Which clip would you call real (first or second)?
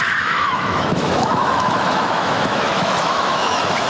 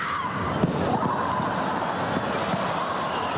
second